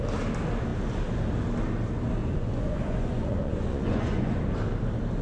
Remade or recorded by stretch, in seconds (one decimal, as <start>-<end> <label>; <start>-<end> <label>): 0.0-2.2 recorded; 2.2-4.4 remade; 4.4-5.2 recorded